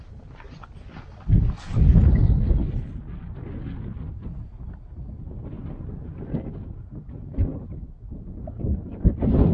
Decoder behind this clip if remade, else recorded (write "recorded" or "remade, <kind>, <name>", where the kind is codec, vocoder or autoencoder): recorded